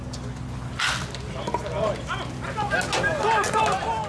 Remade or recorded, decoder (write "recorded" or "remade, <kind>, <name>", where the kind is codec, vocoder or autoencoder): recorded